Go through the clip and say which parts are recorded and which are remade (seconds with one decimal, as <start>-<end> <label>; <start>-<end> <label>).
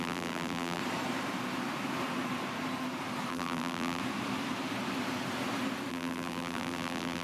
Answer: 0.0-0.8 remade; 0.8-3.3 recorded; 3.3-4.0 remade; 4.0-5.9 recorded; 5.9-7.2 remade